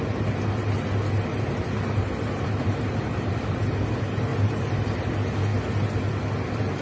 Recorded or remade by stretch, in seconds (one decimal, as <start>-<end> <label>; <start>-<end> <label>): 0.0-1.3 recorded; 1.3-3.6 remade; 3.6-4.3 recorded; 4.3-5.0 remade; 5.0-6.8 recorded